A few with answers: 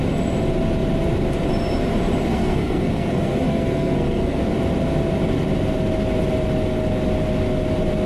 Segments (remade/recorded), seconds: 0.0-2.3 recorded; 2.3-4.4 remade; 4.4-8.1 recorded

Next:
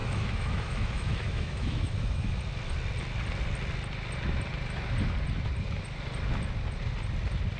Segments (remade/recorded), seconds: 0.0-2.4 remade; 2.4-7.6 recorded

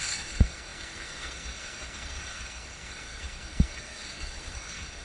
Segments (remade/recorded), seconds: 0.0-5.0 remade

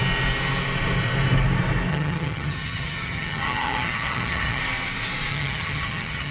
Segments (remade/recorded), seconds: 0.0-1.9 recorded; 1.9-4.6 remade; 4.6-5.3 recorded; 5.3-6.3 remade

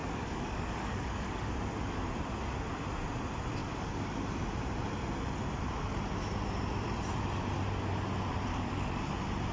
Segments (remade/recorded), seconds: 0.0-1.5 remade; 1.5-3.6 recorded; 3.6-4.2 remade; 4.2-8.5 recorded; 8.5-9.0 remade; 9.0-9.5 recorded

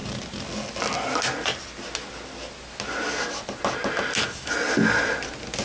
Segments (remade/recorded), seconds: 0.0-5.6 recorded

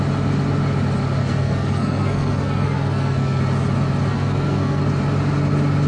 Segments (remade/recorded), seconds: 0.0-1.2 recorded; 1.2-3.4 remade; 3.4-4.1 recorded; 4.1-4.8 remade; 4.8-5.9 recorded

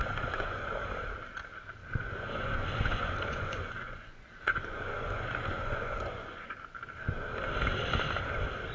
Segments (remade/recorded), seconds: 0.0-0.7 remade; 0.7-1.8 recorded; 1.8-6.5 remade; 6.5-8.7 recorded